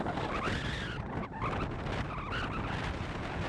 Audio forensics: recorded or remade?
recorded